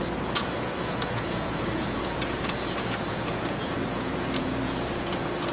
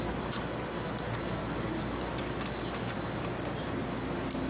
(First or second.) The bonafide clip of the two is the second